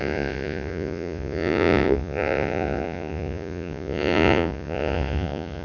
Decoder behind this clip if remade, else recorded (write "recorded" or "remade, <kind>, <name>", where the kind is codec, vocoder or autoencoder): remade, vocoder, Vocos